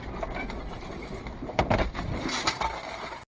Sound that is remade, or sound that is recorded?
recorded